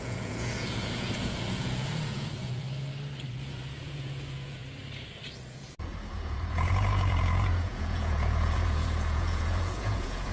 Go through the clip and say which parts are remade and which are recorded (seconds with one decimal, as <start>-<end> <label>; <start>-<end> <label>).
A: 0.0-2.6 remade; 2.6-3.3 recorded; 3.3-4.6 remade; 4.6-5.4 recorded; 5.4-10.3 remade